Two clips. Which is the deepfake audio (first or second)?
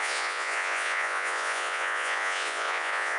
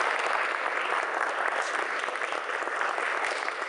first